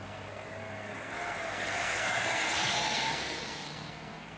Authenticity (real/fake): fake